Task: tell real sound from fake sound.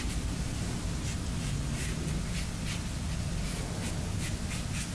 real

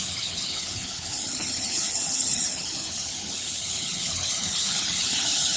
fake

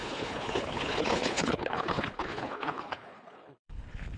fake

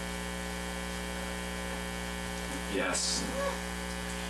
real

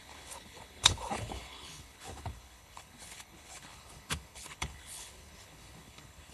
fake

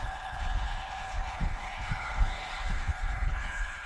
fake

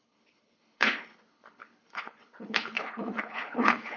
fake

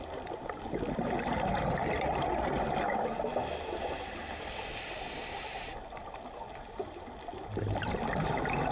real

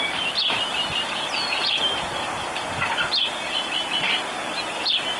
real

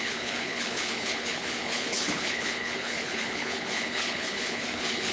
fake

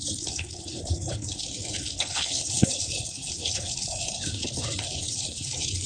fake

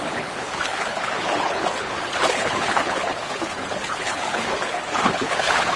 fake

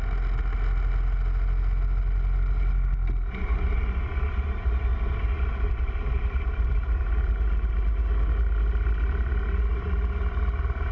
real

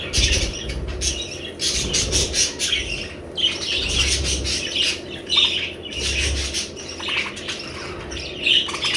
real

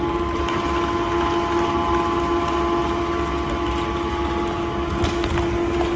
real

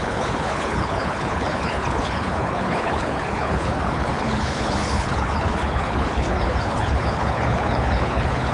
fake